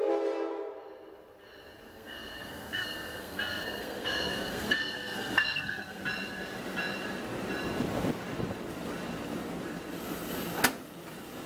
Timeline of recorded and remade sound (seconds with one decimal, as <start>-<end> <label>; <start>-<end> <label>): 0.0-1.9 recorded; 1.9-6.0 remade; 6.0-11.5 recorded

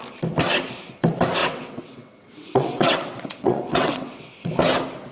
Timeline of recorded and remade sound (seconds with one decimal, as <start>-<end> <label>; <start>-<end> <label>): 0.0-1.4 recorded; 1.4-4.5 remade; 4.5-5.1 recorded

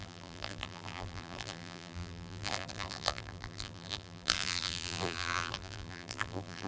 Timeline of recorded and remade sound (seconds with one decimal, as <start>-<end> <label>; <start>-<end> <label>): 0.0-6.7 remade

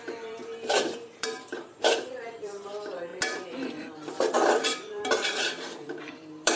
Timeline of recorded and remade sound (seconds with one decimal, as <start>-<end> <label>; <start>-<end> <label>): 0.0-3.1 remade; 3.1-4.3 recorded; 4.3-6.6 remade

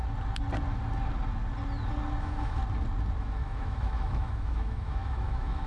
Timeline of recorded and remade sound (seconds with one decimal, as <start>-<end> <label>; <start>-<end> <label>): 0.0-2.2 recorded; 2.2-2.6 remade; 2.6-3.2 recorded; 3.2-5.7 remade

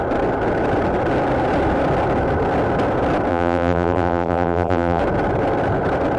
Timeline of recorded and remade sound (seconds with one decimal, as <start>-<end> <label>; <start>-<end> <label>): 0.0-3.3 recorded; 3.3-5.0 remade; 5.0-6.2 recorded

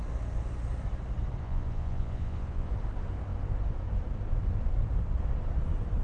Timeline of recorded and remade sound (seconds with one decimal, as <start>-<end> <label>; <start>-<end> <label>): 0.0-1.4 recorded; 1.4-2.7 remade; 2.7-6.0 recorded